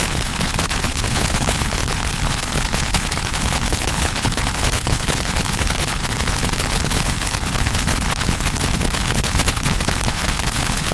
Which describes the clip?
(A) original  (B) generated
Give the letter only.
B